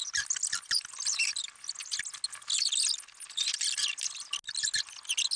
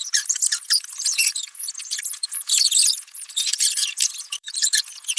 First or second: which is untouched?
first